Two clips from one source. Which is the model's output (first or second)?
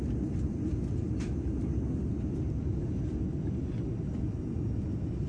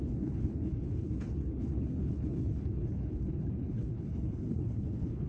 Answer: second